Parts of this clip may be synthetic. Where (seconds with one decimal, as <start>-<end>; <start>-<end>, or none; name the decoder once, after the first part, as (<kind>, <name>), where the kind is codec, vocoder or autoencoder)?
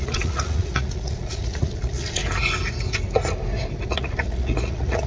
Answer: 0.0-2.2 (vocoder, Vocos); 3.9-5.1